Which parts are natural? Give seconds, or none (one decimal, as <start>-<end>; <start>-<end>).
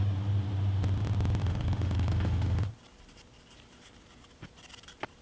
0.0-1.4; 2.7-5.2